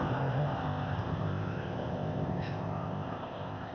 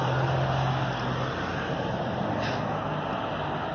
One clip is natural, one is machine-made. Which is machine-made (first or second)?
first